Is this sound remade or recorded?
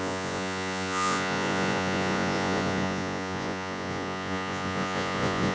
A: remade